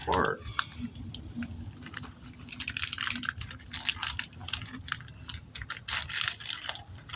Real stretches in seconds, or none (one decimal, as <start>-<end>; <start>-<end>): 0.0-7.2